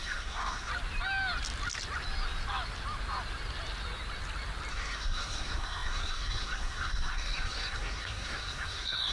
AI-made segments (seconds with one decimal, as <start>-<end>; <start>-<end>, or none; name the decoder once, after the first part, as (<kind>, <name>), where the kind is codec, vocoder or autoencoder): 0.0-0.7 (codec, SNAC); 4.7-9.1